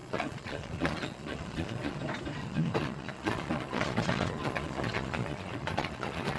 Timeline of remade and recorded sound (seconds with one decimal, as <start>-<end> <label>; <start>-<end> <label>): 0.0-2.0 remade; 2.0-2.4 recorded; 2.4-6.4 remade